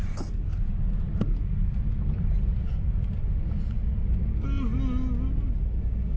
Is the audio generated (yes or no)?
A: no